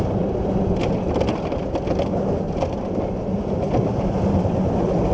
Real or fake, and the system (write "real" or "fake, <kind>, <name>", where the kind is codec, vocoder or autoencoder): real